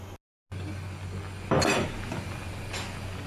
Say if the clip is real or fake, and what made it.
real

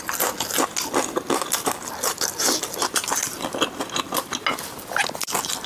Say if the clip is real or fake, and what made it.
real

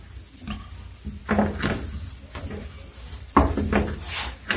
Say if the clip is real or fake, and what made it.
real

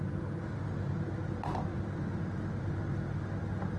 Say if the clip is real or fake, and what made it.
real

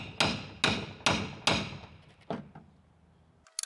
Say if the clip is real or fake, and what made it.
real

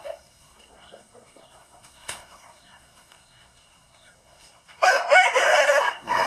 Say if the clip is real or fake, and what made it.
fake, codec, SNAC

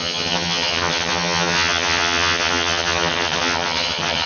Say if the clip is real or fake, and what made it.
fake, vocoder, HiFi-GAN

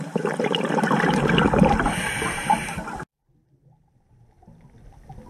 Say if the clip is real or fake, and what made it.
real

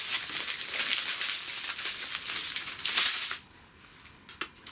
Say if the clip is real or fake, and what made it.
real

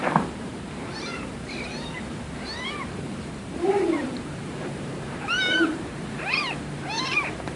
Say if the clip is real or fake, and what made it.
fake, vocoder, BigVGAN v2